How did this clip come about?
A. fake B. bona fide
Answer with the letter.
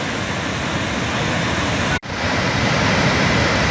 B